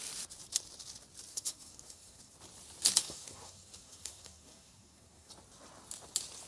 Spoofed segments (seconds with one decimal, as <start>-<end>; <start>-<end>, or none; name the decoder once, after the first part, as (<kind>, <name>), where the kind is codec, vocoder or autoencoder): 1.3-2.3 (codec, SNAC); 3.0-5.3